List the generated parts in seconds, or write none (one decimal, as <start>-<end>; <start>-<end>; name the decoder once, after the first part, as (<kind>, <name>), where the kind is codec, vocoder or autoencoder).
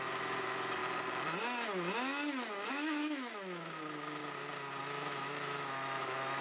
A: 0.0-0.8 (autoencoder, DAC-VAE); 2.7-4.2; 4.8-6.4